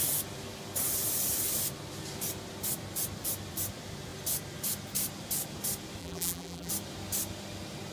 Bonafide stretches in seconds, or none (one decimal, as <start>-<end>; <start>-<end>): 0.0-6.0; 6.7-7.9